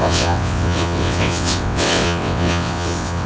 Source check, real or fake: fake